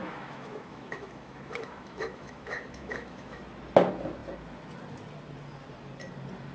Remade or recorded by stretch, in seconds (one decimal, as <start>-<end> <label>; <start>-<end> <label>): 0.0-3.4 remade; 3.4-6.5 recorded